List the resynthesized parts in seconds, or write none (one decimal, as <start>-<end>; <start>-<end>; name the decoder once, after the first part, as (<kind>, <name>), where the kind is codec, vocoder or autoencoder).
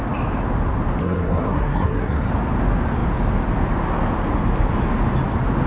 1.0-2.3 (codec, SNAC)